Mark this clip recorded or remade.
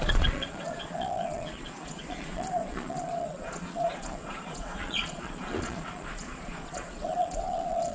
remade